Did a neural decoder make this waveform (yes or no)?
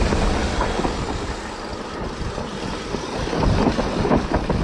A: no